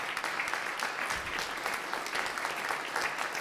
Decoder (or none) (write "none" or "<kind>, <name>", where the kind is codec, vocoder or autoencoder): none